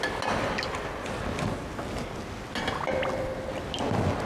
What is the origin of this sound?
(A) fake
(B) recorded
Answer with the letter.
B